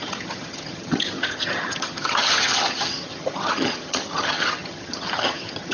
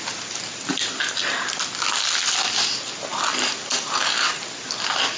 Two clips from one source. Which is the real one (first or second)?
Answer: second